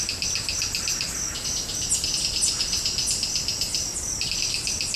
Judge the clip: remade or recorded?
recorded